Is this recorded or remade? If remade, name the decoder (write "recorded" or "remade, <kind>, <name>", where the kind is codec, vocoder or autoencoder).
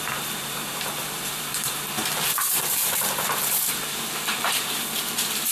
remade, vocoder, BigVGAN v2